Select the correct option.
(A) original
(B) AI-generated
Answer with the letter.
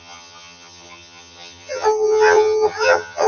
B